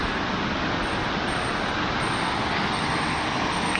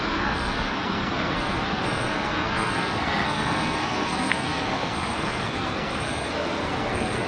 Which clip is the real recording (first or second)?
first